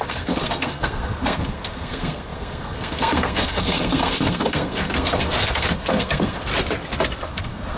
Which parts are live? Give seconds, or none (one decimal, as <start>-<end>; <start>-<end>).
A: 6.5-7.3